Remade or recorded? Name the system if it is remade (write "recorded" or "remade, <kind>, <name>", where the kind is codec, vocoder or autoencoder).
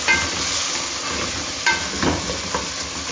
recorded